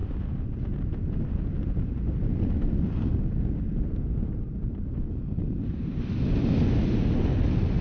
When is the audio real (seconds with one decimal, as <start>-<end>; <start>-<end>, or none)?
0.0-7.8